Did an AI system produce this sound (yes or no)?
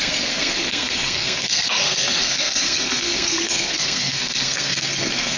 yes